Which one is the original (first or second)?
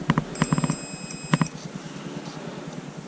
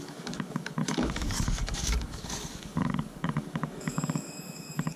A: first